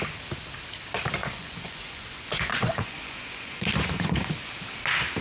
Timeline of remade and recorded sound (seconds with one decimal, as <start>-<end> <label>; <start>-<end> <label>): 0.0-1.2 recorded; 1.2-4.3 remade; 4.3-5.2 recorded